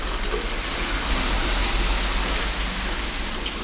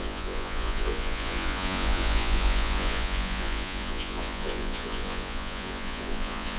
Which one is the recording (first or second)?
first